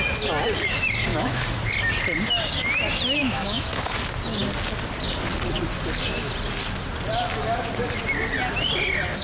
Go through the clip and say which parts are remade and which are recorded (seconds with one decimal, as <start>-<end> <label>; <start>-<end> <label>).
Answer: 0.0-1.1 recorded; 1.1-1.7 remade; 1.7-3.2 recorded; 3.2-4.0 remade; 4.0-9.2 recorded